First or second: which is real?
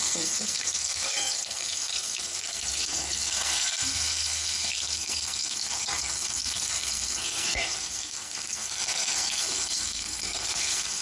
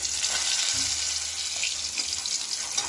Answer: second